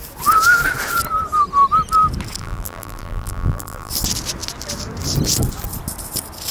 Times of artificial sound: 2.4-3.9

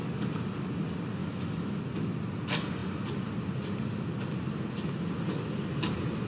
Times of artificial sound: 1.2-1.8

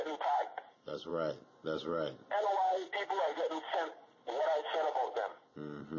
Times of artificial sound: none

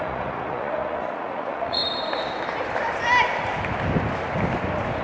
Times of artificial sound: 0.0-1.8

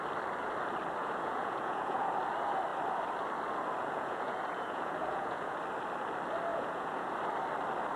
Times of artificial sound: 1.0-2.2; 3.8-5.6; 6.5-7.1